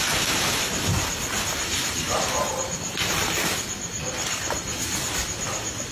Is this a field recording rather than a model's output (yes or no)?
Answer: yes